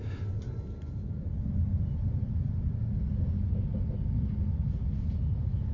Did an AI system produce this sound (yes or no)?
no